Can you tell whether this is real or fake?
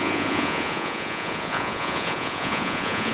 fake